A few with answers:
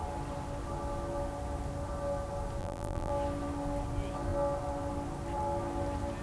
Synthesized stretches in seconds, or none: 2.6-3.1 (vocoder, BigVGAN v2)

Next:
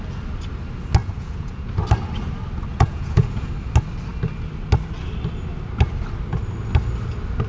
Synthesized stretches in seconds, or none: 1.0-1.7 (vocoder, Vocos); 2.7-3.5

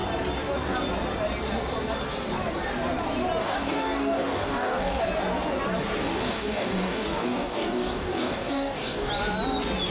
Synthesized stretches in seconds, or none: 3.4-5.0 (codec, DAC); 6.0-9.1

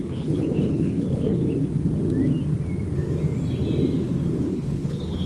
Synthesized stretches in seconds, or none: 0.0-1.4 (codec, HILCodec); 4.5-5.3

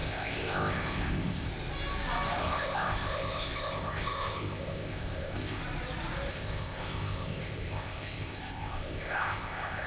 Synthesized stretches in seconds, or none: 0.0-1.5 (codec, ZipCodec); 2.4-5.6; 6.3-9.9

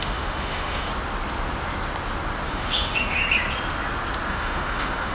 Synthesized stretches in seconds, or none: 0.0-0.9 (autoencoder, DAC-VAE); 2.5-3.2; 4.3-5.1

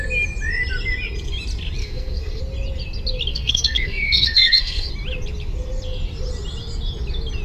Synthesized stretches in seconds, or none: 1.8-2.4 (codec, SNAC); 3.3-4.9

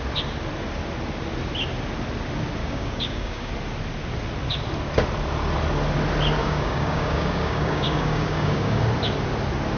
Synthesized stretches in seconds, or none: 2.6-3.5 (codec, DAC); 6.4-8.8